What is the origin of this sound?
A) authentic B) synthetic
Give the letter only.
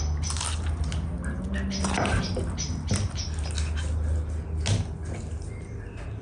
A